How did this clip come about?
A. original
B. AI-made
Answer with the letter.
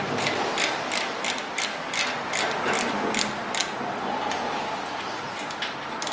A